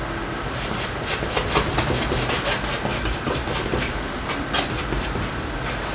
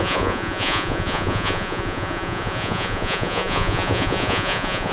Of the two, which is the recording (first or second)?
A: first